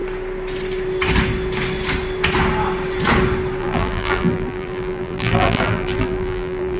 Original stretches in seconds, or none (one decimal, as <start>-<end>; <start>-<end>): 0.0-3.6